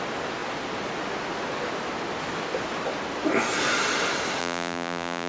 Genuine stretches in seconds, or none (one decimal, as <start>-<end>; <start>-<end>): 0.0-4.4

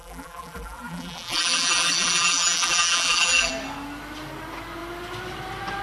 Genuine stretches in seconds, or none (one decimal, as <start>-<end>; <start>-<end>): 3.5-5.8

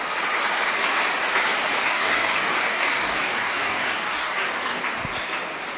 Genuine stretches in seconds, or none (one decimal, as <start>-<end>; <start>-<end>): 0.0-1.7; 4.8-5.8

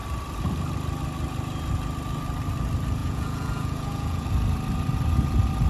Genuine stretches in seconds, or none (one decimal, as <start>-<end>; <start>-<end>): 0.0-3.0; 4.3-5.7

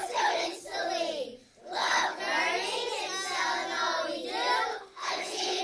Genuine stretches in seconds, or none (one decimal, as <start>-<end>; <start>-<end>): 0.6-1.6; 2.2-4.7

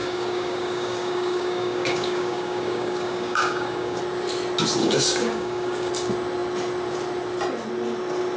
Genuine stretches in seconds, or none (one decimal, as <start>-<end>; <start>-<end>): 4.0-4.8; 5.9-8.4

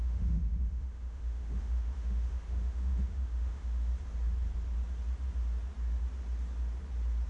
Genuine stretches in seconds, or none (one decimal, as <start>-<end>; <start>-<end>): 3.9-7.3